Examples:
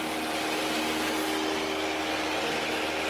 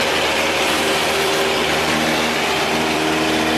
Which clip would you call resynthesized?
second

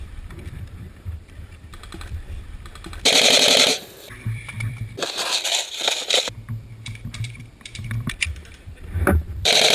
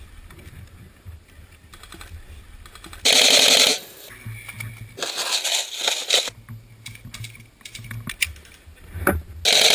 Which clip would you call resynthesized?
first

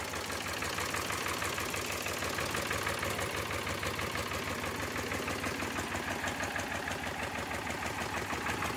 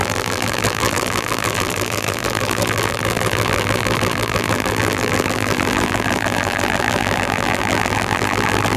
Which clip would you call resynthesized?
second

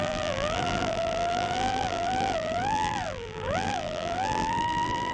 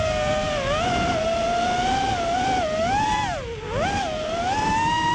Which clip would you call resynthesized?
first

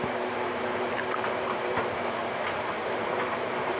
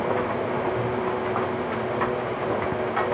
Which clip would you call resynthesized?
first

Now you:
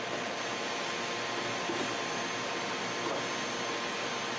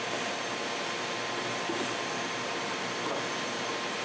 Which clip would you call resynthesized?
second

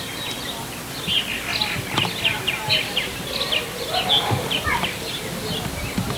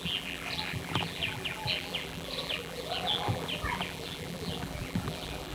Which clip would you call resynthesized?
second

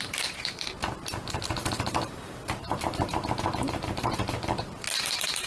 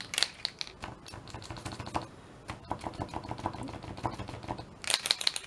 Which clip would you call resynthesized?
first